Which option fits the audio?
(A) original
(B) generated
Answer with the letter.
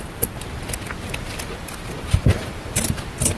A